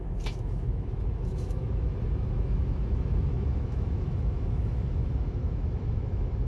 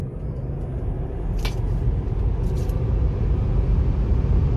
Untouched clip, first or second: second